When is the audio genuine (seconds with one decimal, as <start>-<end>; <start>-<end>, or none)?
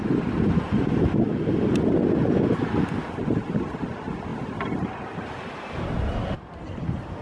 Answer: 0.0-7.2